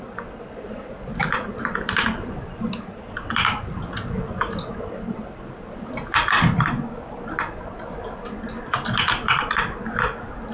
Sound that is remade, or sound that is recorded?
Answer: remade